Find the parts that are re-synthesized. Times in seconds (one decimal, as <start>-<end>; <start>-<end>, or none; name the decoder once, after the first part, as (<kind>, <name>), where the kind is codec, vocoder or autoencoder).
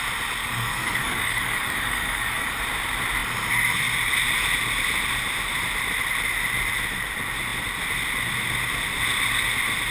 0.4-2.6 (codec, DAC)